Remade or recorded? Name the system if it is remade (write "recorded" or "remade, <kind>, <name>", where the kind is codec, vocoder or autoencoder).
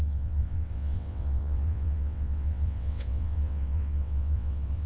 remade, vocoder, WaveNeXt